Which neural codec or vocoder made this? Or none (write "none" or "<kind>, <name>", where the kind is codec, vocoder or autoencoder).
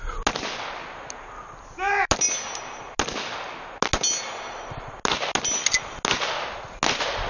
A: none